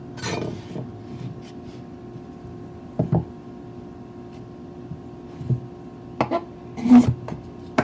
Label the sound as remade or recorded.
recorded